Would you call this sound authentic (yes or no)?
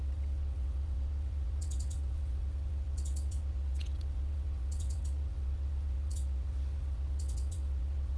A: no